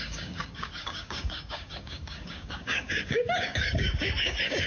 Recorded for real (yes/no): no